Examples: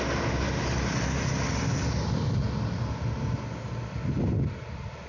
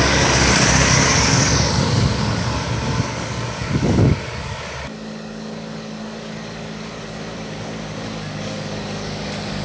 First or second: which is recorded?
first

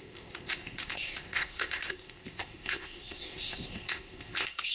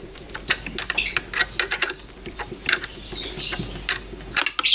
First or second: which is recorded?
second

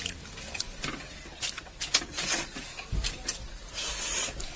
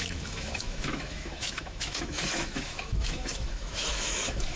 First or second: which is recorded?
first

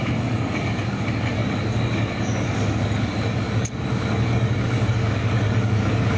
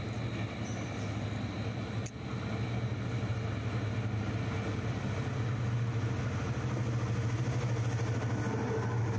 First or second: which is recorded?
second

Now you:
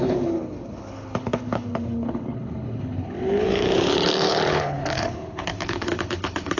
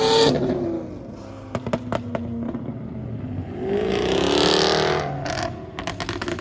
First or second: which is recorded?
second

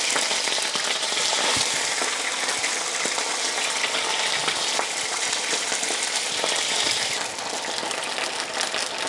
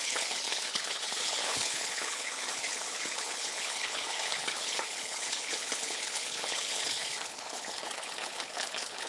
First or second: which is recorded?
first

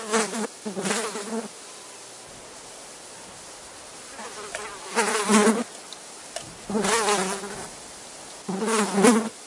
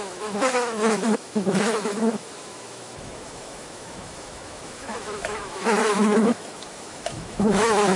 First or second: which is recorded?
first